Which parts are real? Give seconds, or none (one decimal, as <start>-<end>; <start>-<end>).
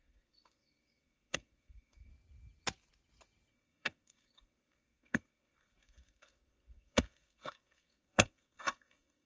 2.1-3.5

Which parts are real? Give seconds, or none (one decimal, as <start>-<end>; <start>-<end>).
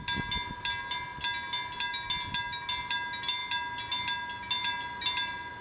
0.0-5.6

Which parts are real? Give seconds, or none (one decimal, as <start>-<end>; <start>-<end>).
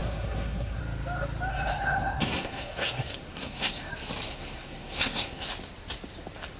0.8-1.5; 3.9-4.3; 5.5-6.6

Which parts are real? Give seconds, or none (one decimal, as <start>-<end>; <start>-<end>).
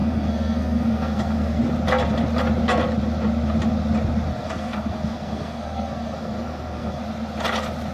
1.6-4.3; 7.0-7.9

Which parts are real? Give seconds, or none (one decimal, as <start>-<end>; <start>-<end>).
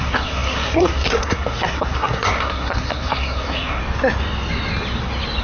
3.8-5.4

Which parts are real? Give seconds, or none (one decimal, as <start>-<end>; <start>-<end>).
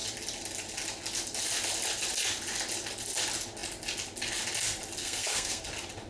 0.0-5.0; 5.6-6.1